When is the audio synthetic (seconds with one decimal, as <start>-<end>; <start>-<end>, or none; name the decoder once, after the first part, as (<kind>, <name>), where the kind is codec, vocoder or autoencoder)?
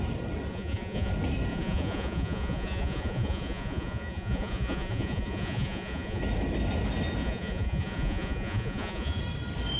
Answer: 0.5-1.1 (vocoder, Vocos); 1.5-6.2; 7.2-9.2